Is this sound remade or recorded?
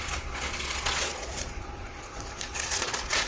remade